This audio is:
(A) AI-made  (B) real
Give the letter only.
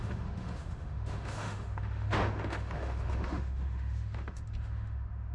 A